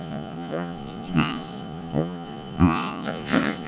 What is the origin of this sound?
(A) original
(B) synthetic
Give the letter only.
B